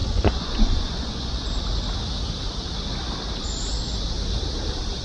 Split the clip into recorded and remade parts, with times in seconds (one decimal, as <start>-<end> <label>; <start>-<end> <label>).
0.0-1.5 remade; 1.5-5.0 recorded